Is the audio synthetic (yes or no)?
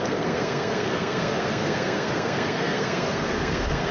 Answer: yes